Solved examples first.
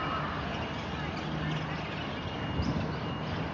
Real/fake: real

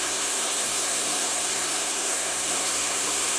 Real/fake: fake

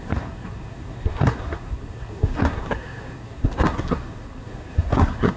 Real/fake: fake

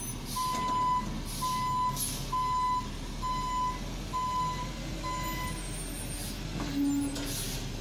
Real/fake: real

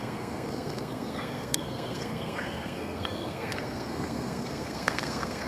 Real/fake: fake